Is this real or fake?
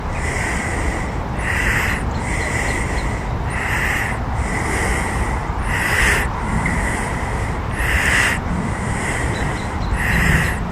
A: fake